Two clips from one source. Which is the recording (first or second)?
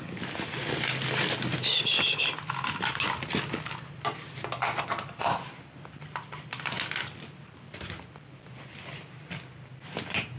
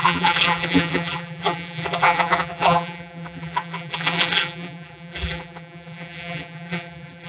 first